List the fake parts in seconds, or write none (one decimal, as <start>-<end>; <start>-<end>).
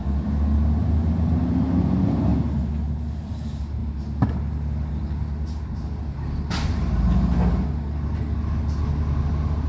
none